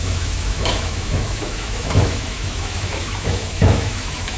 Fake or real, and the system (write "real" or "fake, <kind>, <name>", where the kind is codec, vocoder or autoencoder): fake, autoencoder, DAC-VAE